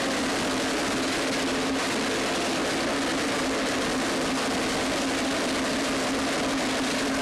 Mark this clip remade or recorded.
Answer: recorded